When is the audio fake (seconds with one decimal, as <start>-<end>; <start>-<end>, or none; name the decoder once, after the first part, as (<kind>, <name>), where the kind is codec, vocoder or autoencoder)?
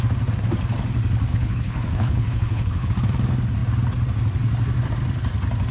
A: 1.3-2.9 (codec, HILCodec)